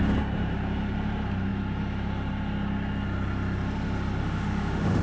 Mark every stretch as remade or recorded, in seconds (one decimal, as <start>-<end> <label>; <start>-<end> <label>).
0.0-4.2 recorded; 4.2-5.0 remade